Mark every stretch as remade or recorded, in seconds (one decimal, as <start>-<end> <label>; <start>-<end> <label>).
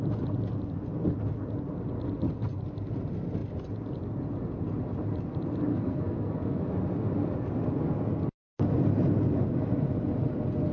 0.0-5.7 recorded; 5.7-6.7 remade; 6.7-10.7 recorded